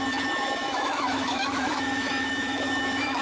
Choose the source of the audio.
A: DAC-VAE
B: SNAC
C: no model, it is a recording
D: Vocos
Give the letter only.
A